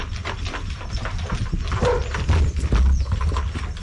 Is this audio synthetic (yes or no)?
no